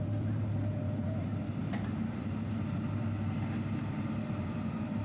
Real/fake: fake